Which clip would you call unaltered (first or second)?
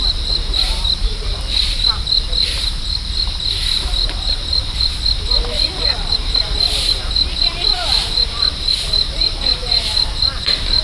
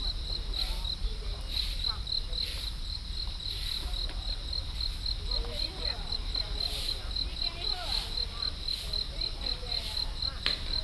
second